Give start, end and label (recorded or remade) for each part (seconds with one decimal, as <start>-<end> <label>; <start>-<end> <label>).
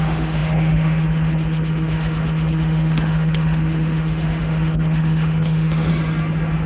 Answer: 0.0-5.9 remade; 5.9-6.7 recorded